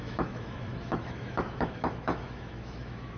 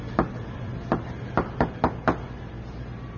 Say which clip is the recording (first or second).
second